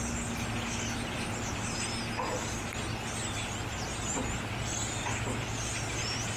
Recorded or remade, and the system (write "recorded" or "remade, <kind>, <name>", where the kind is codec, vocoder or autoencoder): recorded